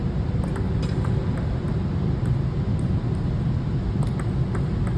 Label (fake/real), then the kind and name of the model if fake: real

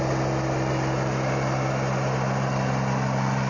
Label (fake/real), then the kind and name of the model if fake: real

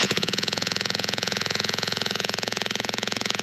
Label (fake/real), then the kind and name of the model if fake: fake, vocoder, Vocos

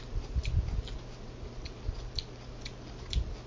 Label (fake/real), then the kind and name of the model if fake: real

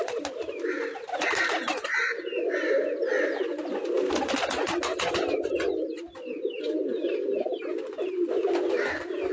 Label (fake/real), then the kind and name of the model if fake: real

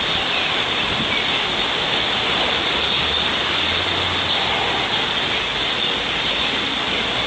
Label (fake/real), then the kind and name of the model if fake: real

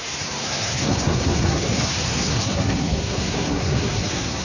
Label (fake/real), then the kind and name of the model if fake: fake, codec, SNAC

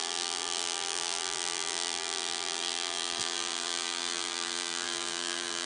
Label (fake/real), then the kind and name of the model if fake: fake, vocoder, BigVGAN v2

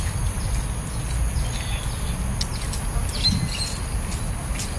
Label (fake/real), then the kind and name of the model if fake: real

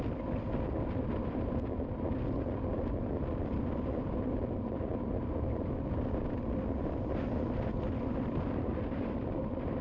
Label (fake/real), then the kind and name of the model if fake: real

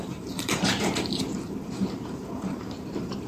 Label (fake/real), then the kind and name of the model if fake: fake, vocoder, BigVGAN v2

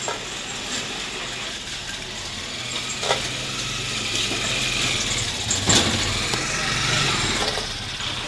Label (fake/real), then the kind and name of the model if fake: real